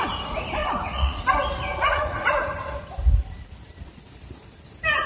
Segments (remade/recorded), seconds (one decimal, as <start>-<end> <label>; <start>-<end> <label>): 0.0-0.6 recorded; 0.6-1.2 remade; 1.2-1.7 recorded; 1.7-2.5 remade; 2.5-5.1 recorded